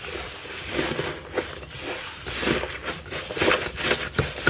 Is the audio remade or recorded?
recorded